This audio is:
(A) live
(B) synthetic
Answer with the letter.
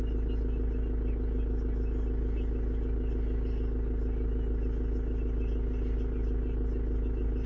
A